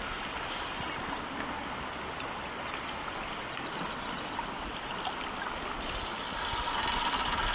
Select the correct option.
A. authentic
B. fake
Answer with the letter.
A